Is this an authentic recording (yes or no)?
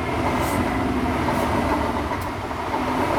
yes